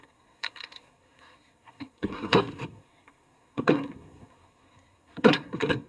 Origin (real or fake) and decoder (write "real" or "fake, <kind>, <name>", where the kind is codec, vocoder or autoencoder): fake, codec, SNAC